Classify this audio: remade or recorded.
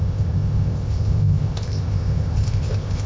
remade